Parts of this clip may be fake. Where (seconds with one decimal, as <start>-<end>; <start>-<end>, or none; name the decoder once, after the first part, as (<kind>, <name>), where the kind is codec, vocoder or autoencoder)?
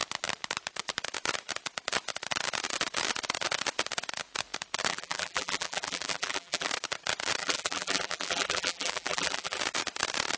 4.9-6.7 (vocoder, BigVGAN v2); 7.4-9.6